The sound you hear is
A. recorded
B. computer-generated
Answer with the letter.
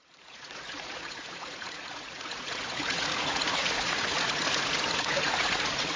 B